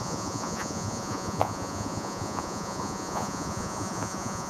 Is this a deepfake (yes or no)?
yes